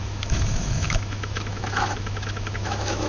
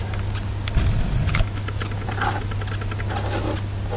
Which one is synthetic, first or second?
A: first